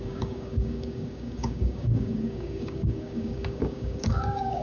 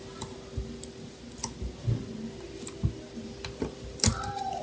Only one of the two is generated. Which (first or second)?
first